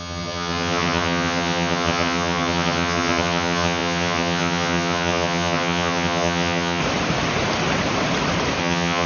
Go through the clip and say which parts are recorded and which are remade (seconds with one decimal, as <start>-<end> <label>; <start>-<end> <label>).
0.0-6.8 remade; 6.8-8.6 recorded; 8.6-9.1 remade